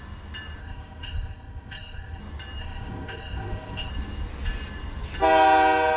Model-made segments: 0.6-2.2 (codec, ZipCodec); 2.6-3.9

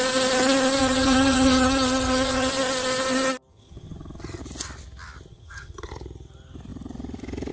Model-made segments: 0.8-2.5 (vocoder, HiFi-GAN); 3.5-4.4; 5.3-5.9